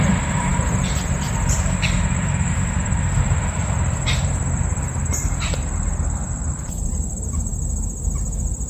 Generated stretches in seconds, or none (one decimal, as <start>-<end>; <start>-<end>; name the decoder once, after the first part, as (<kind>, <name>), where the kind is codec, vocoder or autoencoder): 0.0-7.5 (vocoder, BigVGAN v2)